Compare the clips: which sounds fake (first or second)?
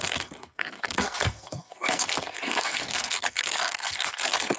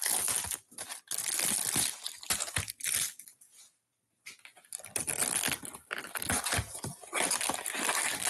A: first